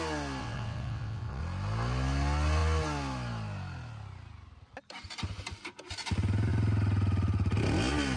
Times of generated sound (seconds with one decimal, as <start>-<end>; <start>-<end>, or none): 0.4-1.4